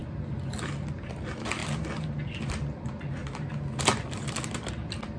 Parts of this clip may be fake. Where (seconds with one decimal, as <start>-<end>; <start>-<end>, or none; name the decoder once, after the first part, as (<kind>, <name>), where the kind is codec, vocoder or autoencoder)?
0.9-1.6 (vocoder, BigVGAN v2); 4.7-5.2